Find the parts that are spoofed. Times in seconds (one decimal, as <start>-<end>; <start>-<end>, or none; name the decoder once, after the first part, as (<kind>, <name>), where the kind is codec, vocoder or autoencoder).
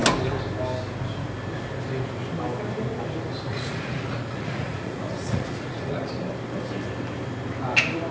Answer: 3.5-6.1 (vocoder, Vocos)